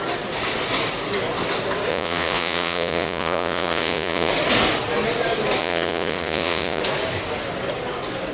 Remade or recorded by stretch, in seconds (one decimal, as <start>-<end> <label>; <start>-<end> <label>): 0.0-1.9 recorded; 1.9-4.3 remade; 4.3-5.6 recorded; 5.6-6.8 remade; 6.8-8.3 recorded